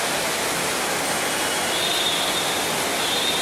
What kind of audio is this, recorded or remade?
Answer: recorded